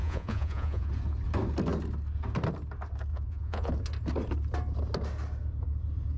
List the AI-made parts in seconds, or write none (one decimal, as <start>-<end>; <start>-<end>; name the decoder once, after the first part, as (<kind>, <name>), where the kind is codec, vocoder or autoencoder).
0.0-0.9 (vocoder, Vocos); 3.1-3.7